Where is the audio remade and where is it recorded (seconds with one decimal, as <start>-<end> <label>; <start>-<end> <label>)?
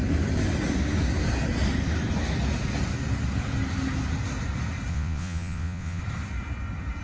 0.0-4.9 recorded; 4.9-6.0 remade; 6.0-7.0 recorded